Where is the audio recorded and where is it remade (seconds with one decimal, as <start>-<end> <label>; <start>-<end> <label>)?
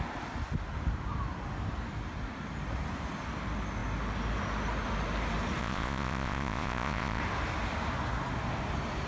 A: 0.0-5.6 recorded; 5.6-7.2 remade; 7.2-9.1 recorded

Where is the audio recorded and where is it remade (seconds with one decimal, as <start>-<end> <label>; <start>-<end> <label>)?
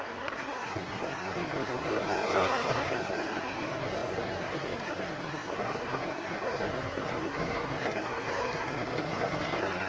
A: 0.0-9.9 remade